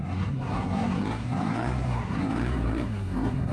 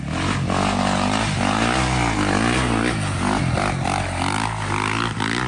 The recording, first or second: second